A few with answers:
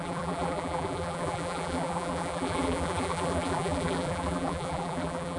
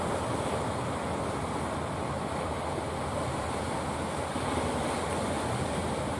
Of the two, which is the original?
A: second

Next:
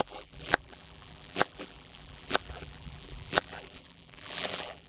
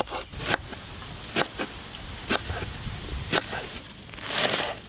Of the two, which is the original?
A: second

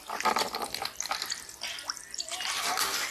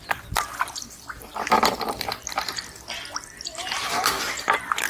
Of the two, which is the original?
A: first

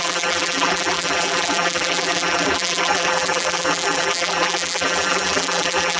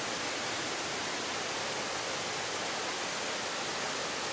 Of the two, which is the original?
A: second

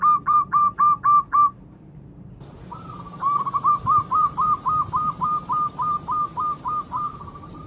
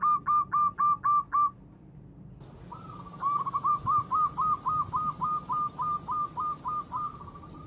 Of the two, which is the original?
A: second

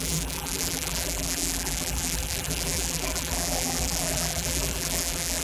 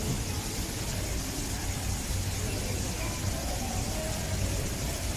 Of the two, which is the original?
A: second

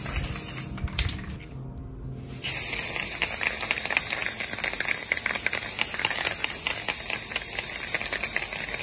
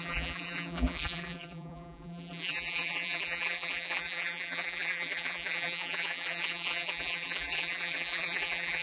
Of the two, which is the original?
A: first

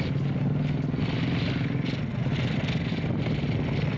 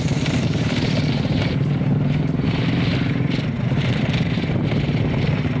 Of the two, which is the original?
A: first